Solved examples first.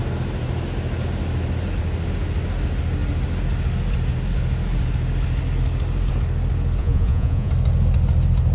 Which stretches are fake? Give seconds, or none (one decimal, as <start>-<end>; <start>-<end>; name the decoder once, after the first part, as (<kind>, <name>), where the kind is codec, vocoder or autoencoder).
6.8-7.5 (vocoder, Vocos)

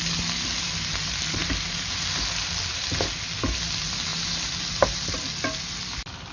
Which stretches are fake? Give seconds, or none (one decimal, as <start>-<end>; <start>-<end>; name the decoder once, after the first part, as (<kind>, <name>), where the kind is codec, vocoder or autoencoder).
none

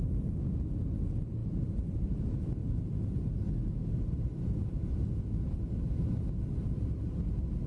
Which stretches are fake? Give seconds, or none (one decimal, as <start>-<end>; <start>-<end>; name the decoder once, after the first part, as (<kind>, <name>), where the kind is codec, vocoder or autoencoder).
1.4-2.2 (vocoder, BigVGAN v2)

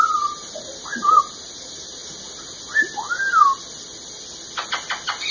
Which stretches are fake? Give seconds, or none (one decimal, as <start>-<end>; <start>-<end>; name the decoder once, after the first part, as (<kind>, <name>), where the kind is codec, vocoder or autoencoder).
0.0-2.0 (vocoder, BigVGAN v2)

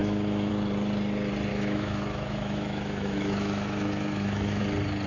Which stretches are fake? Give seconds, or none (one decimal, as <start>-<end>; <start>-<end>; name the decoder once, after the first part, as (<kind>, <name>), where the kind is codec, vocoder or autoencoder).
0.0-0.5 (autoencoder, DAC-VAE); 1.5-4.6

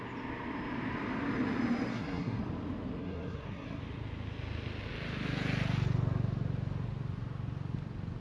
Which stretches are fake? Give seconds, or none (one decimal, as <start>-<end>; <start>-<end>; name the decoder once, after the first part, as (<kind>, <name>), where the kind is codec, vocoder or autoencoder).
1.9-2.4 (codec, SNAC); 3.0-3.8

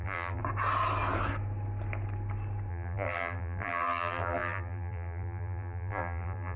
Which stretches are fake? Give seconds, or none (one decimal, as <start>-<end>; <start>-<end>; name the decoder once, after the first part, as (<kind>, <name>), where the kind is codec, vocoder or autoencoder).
0.0-0.4 (vocoder, BigVGAN v2); 2.7-6.6

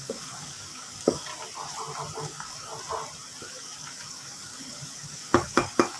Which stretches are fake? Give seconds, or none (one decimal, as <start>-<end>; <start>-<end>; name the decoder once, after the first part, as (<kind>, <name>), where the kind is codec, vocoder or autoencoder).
0.0-1.3 (codec, DAC); 2.2-2.7; 3.4-6.0